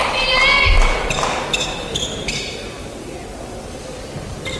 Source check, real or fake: real